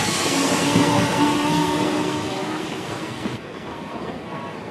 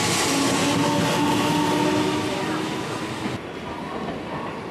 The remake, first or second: first